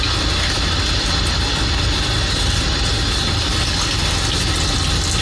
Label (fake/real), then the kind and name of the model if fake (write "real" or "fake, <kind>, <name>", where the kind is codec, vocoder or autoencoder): real